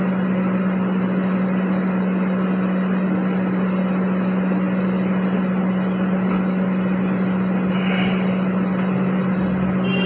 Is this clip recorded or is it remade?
recorded